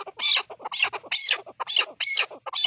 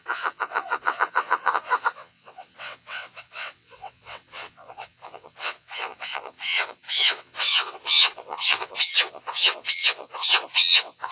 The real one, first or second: first